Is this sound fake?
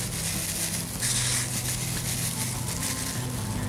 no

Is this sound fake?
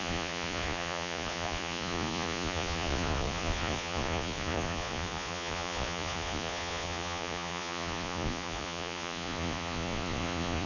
yes